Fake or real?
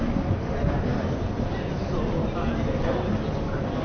real